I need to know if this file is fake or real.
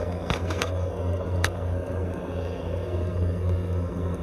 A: fake